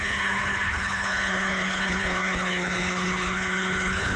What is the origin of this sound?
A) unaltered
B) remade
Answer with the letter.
B